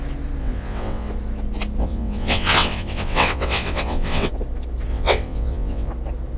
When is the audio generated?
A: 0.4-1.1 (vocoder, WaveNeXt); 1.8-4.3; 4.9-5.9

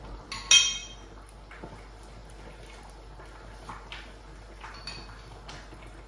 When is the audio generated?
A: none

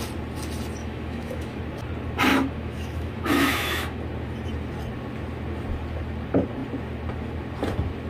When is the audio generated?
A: 0.8-1.6 (autoencoder, DAC-VAE); 2.3-4.0